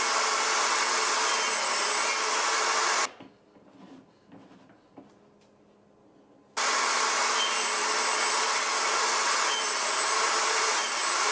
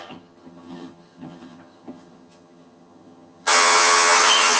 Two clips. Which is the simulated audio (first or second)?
second